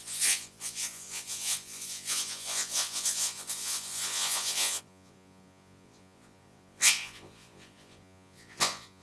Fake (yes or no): yes